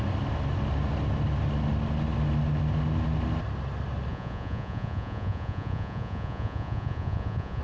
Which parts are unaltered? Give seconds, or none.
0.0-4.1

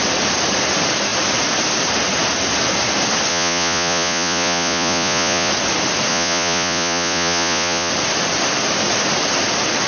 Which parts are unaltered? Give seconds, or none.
0.0-3.3; 5.5-6.1; 7.9-9.9

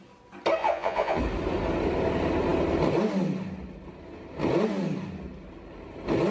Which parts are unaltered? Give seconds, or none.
0.0-0.6; 1.2-6.3

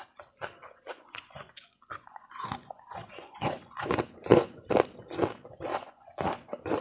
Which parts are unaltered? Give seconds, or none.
0.0-0.6; 4.7-5.7